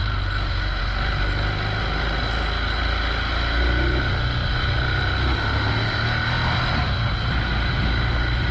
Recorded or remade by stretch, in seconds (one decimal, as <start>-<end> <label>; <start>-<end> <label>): 0.0-8.5 recorded